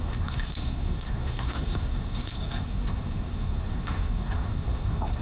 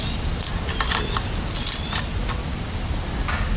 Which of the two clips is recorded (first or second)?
second